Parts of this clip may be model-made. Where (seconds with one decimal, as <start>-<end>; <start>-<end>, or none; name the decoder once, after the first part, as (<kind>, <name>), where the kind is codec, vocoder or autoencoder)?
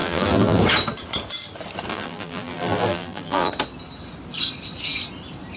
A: 0.0-0.6 (vocoder, BigVGAN v2); 1.9-3.5